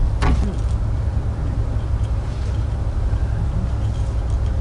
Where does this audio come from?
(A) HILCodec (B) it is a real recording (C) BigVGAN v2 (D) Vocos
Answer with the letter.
B